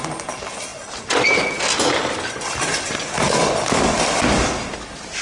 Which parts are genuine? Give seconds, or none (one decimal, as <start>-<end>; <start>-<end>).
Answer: 0.0-5.2